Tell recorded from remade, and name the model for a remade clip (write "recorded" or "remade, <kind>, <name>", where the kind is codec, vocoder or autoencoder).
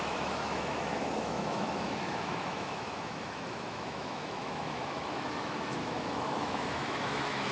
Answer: remade, autoencoder, DAC-VAE